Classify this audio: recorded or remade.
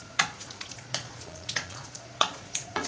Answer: remade